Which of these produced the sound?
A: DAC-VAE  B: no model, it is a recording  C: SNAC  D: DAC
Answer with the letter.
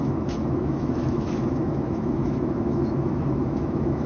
A